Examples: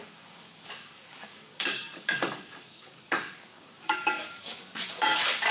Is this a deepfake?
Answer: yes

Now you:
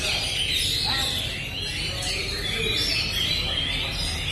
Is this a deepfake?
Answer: no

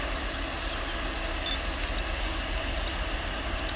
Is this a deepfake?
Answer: no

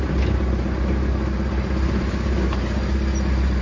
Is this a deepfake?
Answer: no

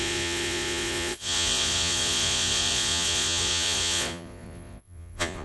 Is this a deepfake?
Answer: yes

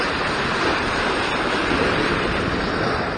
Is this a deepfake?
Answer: yes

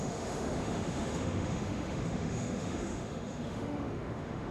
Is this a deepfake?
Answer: yes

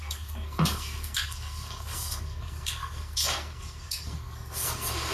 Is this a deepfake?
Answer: yes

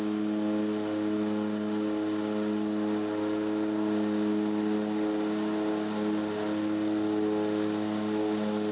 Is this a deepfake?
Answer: no